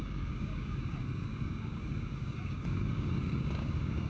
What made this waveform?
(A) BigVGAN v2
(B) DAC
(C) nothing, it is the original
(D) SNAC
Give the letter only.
B